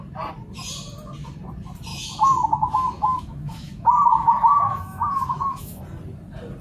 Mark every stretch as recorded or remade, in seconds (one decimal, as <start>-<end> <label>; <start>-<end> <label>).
0.0-1.9 recorded; 1.9-5.8 remade; 5.8-6.6 recorded